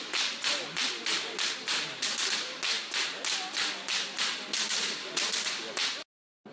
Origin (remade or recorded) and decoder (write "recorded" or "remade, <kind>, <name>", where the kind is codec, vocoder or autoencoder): recorded